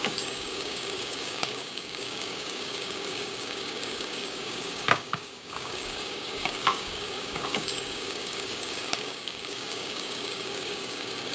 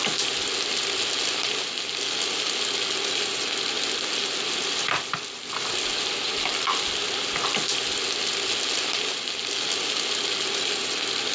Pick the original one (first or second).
second